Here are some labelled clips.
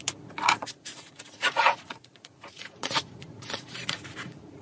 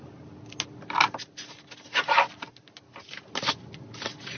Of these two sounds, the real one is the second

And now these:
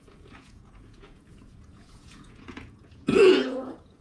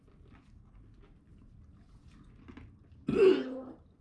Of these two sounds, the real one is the second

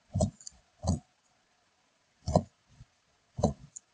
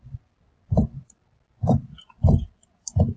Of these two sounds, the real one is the second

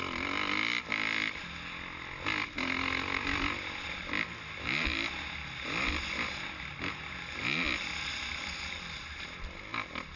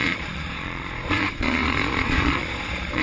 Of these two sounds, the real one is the first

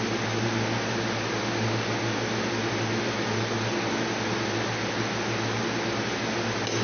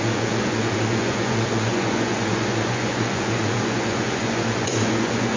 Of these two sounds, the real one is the first